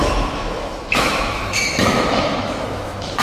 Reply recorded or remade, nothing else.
remade